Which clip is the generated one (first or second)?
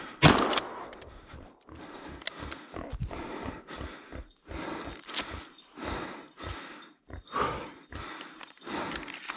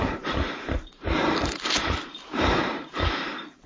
second